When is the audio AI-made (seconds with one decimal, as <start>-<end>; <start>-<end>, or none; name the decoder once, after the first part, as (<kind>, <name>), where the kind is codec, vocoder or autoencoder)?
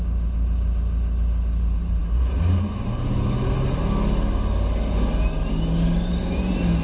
none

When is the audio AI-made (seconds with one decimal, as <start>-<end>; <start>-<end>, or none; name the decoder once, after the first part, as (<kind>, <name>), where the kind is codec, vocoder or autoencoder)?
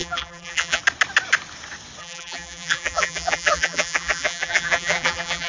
0.0-0.8 (vocoder, BigVGAN v2); 2.0-5.5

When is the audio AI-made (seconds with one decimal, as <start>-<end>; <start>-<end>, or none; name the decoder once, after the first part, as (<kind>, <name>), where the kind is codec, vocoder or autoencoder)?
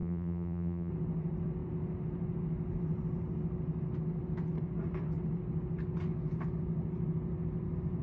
0.0-0.9 (vocoder, BigVGAN v2)